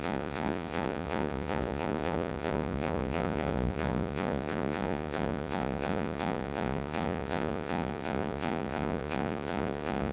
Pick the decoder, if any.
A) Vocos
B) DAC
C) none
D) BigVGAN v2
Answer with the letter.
A